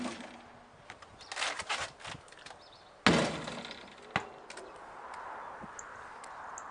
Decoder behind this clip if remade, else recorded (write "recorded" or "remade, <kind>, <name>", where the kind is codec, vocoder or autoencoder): recorded